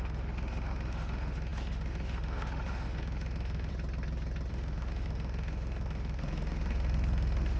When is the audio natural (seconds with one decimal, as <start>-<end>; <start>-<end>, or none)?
3.7-4.5